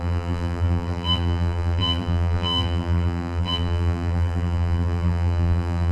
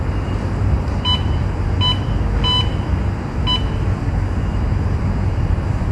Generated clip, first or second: first